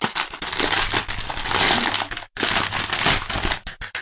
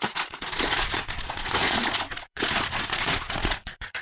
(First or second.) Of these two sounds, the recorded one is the first